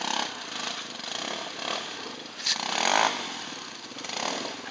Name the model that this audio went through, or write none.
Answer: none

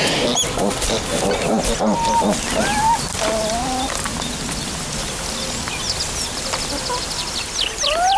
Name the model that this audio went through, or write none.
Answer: none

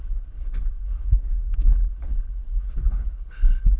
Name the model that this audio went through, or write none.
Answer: codec, HILCodec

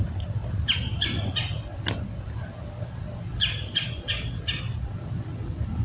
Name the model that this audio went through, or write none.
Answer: none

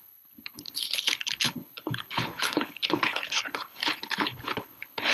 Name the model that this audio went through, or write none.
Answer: codec, HILCodec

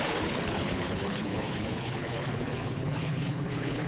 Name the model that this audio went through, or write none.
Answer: codec, HILCodec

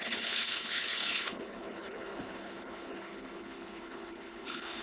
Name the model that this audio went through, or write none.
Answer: codec, HILCodec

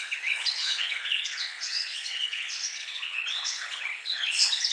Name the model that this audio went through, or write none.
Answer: codec, HILCodec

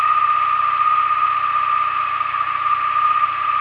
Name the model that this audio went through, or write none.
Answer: none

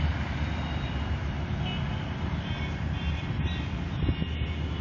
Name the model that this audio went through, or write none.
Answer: none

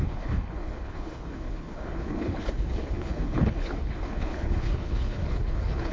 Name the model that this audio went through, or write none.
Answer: codec, HILCodec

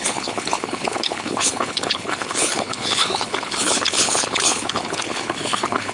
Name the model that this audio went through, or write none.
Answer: codec, HILCodec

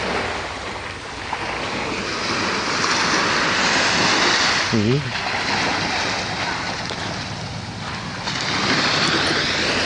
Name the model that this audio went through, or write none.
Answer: none